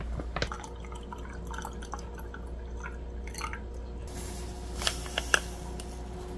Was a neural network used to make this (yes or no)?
no